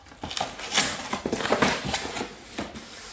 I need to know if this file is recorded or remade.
recorded